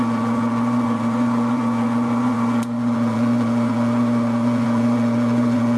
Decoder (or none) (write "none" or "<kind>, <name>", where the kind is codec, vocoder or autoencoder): vocoder, Vocos